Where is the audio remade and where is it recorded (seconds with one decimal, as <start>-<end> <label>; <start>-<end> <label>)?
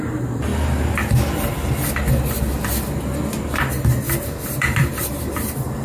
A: 0.0-0.5 remade; 0.5-4.0 recorded; 4.0-5.8 remade